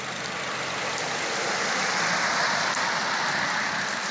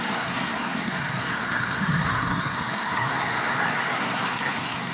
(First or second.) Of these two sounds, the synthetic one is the second